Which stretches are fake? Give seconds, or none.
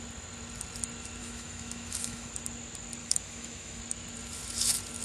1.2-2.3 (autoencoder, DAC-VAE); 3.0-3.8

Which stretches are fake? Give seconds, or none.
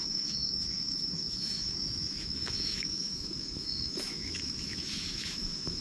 0.0-5.8 (autoencoder, DAC-VAE)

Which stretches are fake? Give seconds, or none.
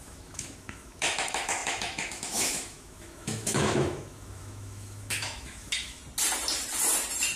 0.0-6.0 (autoencoder, DAC-VAE)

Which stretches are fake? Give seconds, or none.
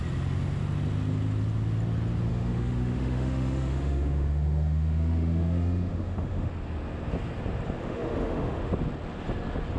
2.3-6.5 (autoencoder, DAC-VAE); 7.8-8.7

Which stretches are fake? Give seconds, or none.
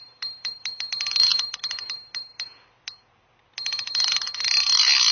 none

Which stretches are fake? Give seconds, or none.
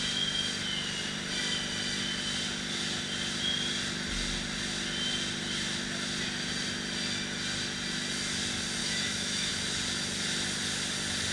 8.8-9.5 (autoencoder, DAC-VAE)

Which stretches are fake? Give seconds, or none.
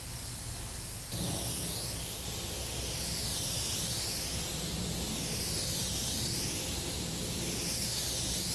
none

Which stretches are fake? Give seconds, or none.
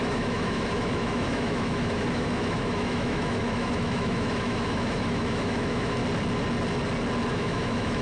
0.0-6.0 (autoencoder, DAC-VAE); 7.3-8.0